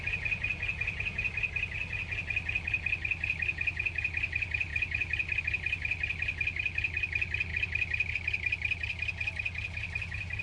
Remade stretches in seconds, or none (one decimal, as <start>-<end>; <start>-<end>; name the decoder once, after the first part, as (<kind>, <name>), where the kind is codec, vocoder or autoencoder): none